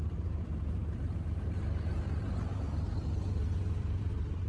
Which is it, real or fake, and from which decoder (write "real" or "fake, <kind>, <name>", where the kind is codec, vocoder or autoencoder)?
fake, vocoder, BigVGAN v2